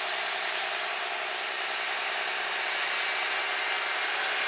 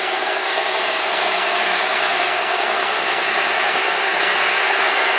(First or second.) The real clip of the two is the first